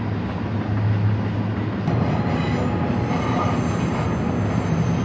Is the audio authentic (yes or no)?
yes